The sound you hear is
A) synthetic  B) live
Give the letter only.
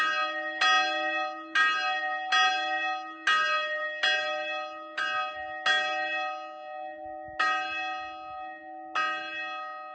B